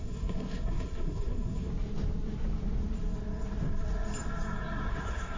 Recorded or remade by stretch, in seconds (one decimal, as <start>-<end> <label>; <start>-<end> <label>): 0.0-1.7 remade; 1.7-4.9 recorded; 4.9-5.4 remade